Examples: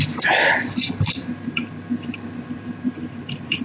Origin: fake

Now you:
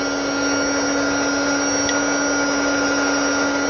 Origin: real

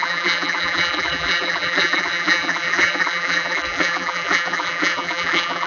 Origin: fake